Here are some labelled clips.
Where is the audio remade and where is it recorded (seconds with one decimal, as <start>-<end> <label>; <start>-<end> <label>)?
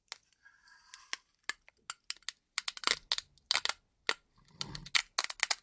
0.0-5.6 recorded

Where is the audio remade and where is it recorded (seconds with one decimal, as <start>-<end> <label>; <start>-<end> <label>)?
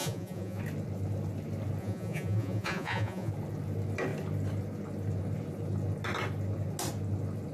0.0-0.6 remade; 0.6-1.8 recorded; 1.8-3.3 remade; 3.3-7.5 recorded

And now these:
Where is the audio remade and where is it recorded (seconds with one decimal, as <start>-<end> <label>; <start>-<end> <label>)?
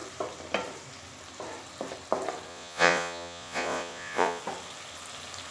0.0-2.5 recorded; 2.5-4.4 remade; 4.4-5.5 recorded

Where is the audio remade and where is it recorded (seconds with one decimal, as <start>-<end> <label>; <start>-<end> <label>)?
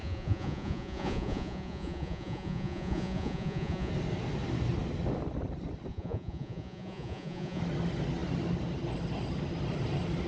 0.0-3.9 remade; 3.9-5.9 recorded; 5.9-7.6 remade; 7.6-10.3 recorded